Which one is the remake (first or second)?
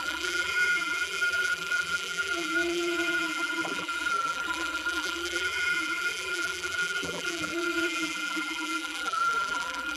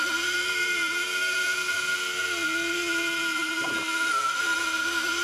first